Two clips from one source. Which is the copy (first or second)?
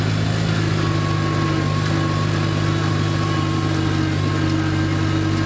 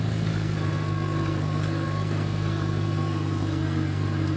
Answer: second